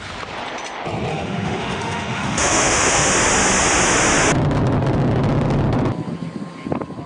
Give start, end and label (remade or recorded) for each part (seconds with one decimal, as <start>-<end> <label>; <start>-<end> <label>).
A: 0.0-1.1 recorded; 1.1-3.1 remade; 3.1-7.1 recorded